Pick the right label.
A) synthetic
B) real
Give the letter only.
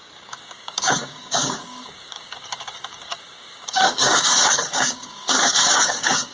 A